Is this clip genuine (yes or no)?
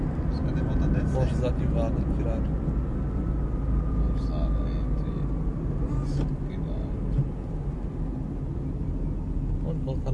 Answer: yes